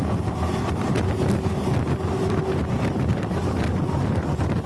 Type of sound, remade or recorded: recorded